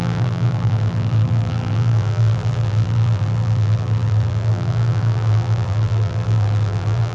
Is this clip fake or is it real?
fake